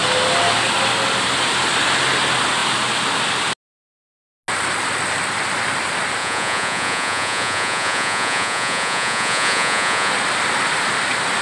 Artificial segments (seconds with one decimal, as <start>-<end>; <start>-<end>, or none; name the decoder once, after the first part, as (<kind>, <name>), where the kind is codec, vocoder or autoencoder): 6.2-10.1 (vocoder, Vocos)